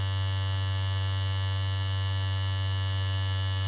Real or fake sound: real